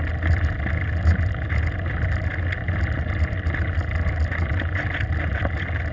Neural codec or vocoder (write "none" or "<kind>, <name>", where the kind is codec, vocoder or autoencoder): none